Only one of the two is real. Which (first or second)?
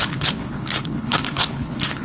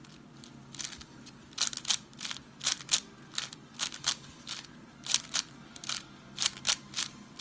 second